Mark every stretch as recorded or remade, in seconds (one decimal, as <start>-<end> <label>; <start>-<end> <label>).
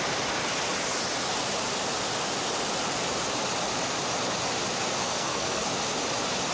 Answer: 0.0-5.0 recorded; 5.0-5.7 remade; 5.7-6.5 recorded